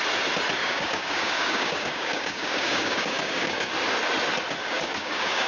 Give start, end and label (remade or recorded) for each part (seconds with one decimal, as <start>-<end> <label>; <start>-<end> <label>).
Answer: 0.0-0.6 recorded; 0.6-3.7 remade; 3.7-4.6 recorded; 4.6-5.5 remade